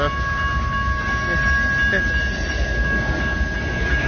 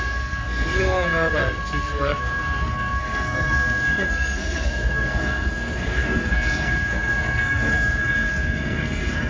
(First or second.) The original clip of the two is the first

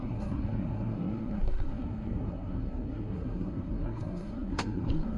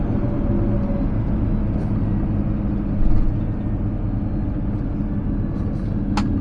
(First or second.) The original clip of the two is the second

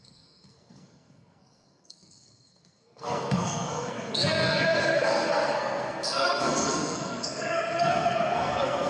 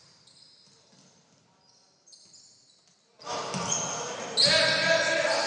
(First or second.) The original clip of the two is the second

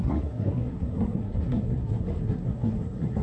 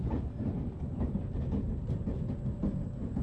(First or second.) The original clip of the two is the second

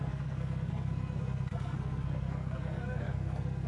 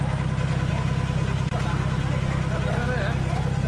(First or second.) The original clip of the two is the second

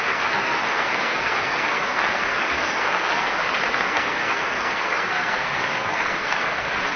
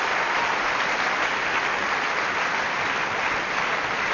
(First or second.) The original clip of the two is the second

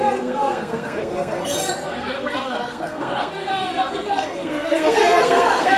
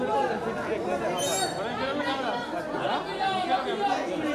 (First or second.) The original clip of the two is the second